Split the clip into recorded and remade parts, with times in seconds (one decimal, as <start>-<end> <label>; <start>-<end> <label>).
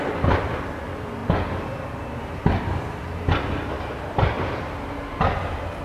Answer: 0.0-5.8 recorded